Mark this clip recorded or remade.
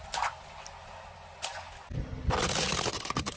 recorded